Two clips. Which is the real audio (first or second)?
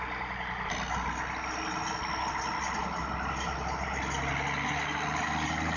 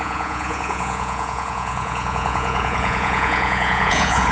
first